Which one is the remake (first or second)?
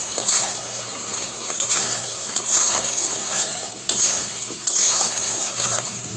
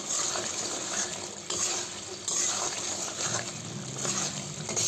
first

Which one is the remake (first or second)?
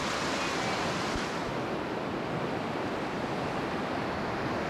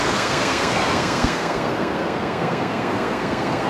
second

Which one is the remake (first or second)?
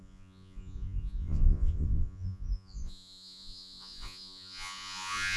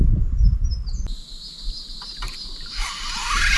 first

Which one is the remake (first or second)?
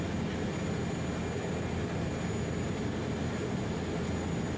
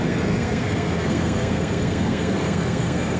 second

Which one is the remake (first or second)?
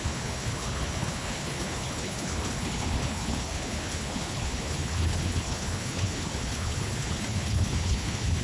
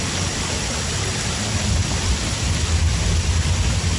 first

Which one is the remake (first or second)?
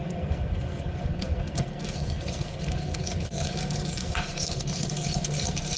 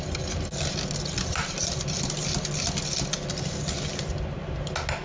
first